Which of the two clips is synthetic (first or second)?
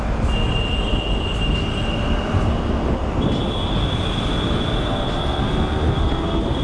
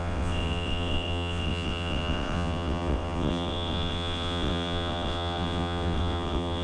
second